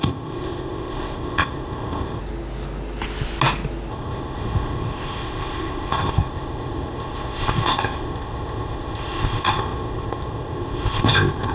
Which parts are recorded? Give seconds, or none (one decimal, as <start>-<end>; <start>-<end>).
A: 2.2-3.9